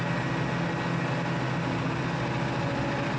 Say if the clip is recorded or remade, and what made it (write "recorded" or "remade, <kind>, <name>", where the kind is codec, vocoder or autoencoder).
recorded